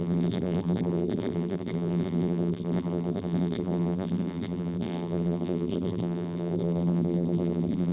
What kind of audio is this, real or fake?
fake